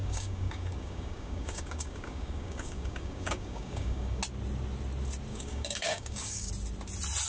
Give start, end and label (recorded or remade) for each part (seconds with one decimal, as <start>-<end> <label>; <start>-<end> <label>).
0.0-4.2 remade; 4.2-5.3 recorded; 5.3-6.5 remade; 6.5-7.3 recorded